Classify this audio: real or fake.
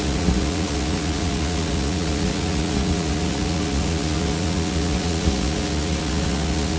fake